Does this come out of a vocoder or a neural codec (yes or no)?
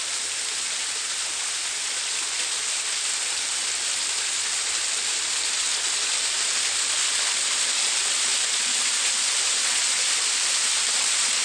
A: no